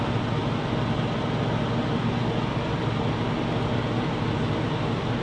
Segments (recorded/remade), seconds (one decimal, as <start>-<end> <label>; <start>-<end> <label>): 0.0-5.2 recorded